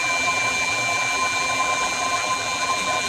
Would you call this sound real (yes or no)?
no